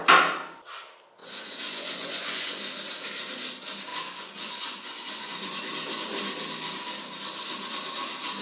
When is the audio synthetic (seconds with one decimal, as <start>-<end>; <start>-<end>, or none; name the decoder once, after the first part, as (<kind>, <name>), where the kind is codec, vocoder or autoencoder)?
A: 1.2-2.6 (vocoder, Vocos); 3.9-5.6